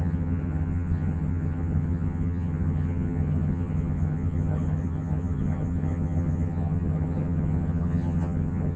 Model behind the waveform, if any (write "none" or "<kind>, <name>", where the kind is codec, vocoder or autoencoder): vocoder, HiFi-GAN